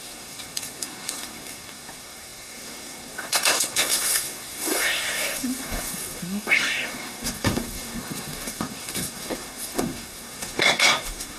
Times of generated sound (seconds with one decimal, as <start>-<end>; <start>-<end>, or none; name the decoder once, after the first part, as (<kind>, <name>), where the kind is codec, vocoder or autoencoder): 0.0-11.4 (codec, SNAC)